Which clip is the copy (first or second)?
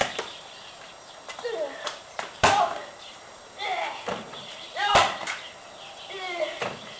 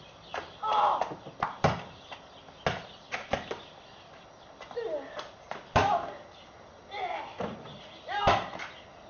first